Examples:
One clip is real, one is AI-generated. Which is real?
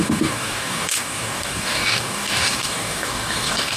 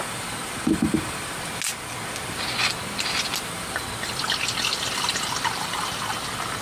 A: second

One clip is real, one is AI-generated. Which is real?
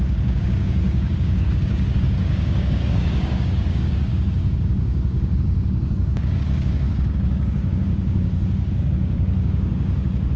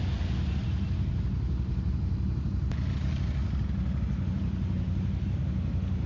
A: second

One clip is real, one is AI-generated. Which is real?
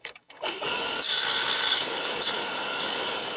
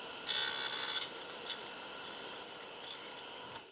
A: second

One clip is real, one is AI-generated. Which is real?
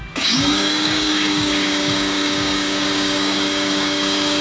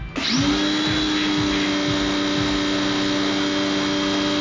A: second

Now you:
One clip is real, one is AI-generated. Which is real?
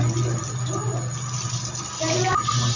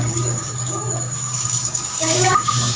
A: first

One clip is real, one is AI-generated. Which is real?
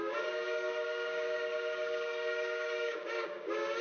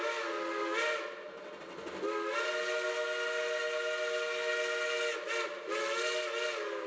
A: second